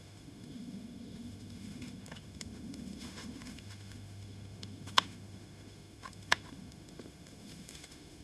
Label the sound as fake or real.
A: fake